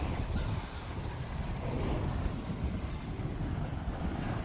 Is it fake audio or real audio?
real